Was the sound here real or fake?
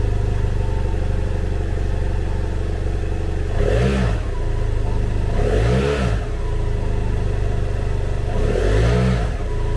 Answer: real